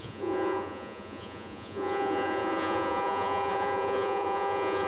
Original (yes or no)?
no